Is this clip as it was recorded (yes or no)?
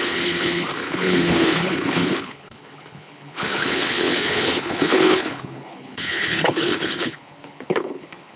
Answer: no